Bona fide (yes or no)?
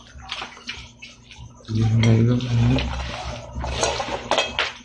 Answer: yes